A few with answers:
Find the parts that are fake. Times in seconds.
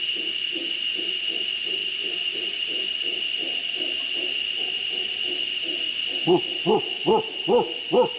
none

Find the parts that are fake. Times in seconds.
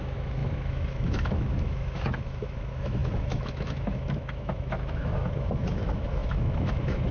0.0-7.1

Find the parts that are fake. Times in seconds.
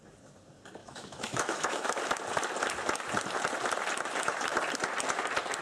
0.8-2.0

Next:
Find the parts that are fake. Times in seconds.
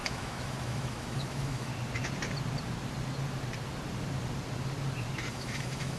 0.0-1.7; 5.3-6.0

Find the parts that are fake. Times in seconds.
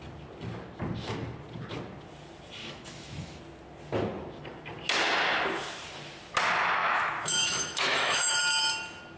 2.6-3.4; 6.8-8.4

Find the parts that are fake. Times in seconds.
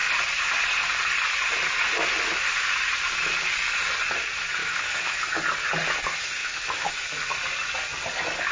4.6-5.2; 6.4-6.9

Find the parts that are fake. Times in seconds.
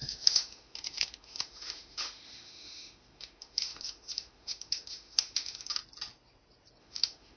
0.0-5.8; 6.8-7.4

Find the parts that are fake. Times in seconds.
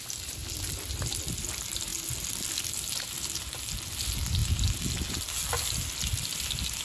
none